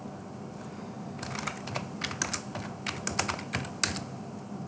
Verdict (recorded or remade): recorded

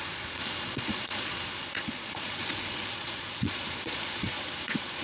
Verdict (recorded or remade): remade